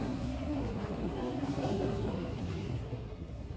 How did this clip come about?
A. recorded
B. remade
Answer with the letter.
B